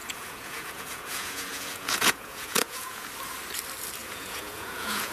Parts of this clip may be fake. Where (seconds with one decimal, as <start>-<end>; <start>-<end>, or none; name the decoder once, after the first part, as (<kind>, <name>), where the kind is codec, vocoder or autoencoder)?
0.0-3.1 (vocoder, Vocos); 4.0-5.1